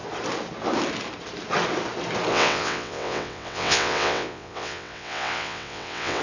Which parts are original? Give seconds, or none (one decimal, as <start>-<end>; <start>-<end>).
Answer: 0.0-2.3